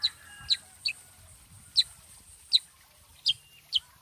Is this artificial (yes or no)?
no